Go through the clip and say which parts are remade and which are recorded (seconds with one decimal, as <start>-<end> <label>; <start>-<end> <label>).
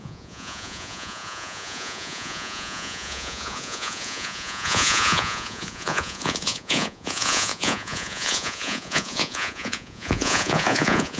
0.0-11.2 remade